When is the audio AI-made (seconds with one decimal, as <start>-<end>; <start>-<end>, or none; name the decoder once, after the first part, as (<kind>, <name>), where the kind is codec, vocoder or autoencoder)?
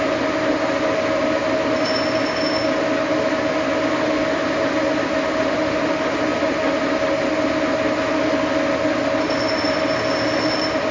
none